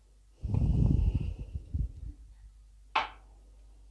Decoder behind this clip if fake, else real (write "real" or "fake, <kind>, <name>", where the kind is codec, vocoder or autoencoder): real